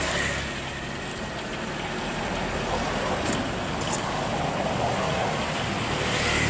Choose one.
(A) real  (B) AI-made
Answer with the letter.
A